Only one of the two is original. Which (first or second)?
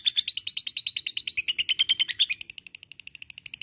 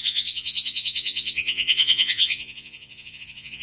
first